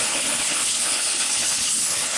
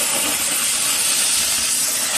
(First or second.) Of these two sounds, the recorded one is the second